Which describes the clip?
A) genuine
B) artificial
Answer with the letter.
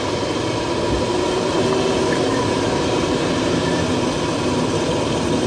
A